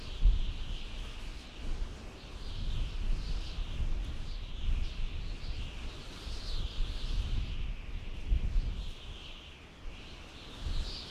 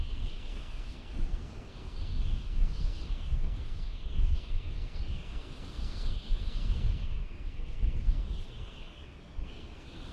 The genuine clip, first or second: first